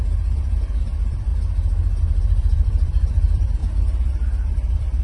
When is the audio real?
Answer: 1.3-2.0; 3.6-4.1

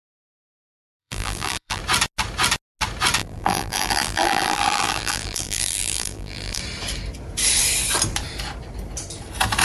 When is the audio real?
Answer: 0.0-1.0; 1.8-3.2; 6.6-9.6